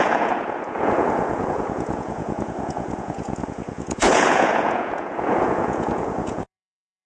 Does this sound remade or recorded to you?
remade